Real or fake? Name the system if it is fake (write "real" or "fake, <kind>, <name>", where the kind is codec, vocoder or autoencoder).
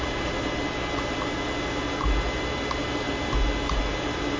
real